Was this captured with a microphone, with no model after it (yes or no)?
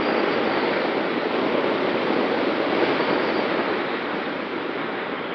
yes